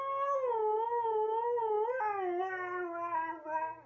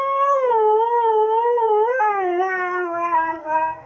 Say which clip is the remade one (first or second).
second